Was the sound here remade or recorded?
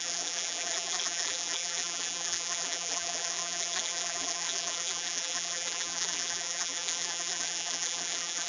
remade